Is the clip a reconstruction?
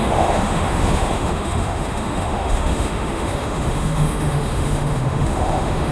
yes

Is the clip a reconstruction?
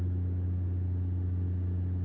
no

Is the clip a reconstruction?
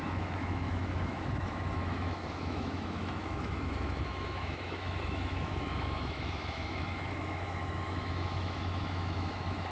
yes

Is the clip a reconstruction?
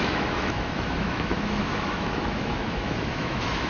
yes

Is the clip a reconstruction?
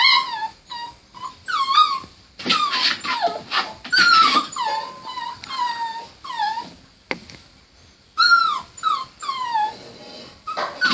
no